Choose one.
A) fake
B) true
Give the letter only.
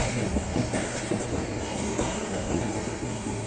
A